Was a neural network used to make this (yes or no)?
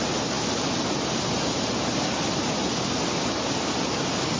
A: no